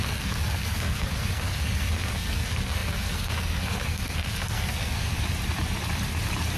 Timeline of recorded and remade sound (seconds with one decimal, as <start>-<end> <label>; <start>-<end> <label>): 0.0-5.1 remade; 5.1-6.6 recorded